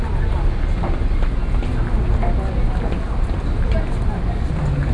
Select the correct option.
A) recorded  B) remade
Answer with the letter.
A